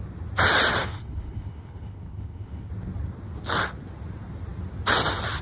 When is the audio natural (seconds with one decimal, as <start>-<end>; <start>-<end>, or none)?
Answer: 0.0-0.8; 2.7-5.4